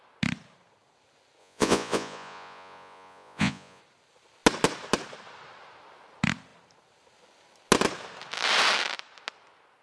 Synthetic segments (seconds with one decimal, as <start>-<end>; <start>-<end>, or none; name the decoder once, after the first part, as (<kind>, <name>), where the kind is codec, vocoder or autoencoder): 1.4-3.8 (vocoder, Vocos)